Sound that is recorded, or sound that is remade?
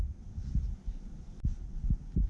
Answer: recorded